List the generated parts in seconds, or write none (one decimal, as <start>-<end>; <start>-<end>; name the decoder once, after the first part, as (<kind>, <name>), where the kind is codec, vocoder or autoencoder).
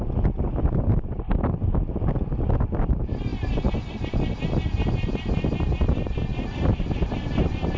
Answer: none